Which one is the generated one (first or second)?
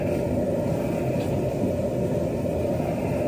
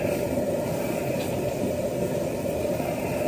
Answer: second